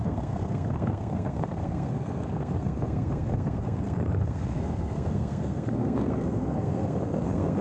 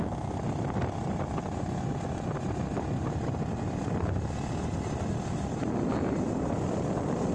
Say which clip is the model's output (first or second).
first